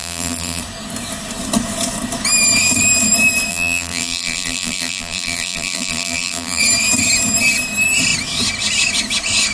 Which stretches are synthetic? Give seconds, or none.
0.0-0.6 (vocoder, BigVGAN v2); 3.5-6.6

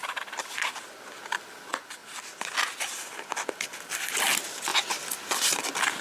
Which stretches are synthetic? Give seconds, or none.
0.0-0.7 (vocoder, BigVGAN v2)

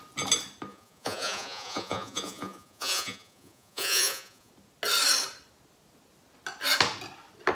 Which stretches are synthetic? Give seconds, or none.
0.7-4.5 (vocoder, Vocos)

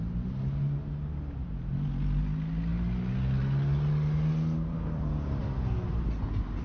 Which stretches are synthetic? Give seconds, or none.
none

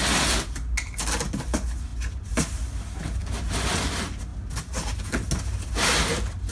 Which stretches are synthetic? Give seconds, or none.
none

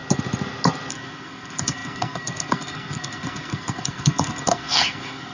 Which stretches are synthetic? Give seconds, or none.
0.9-5.3 (codec, SNAC)

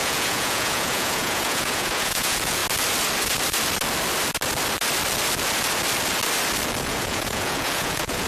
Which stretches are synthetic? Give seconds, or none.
0.0-2.6 (vocoder, Vocos); 6.8-8.3

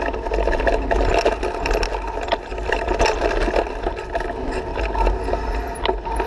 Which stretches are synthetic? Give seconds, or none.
none